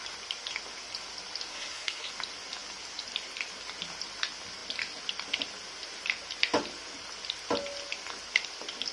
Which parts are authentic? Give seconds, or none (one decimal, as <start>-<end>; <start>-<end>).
0.0-1.5; 2.1-8.9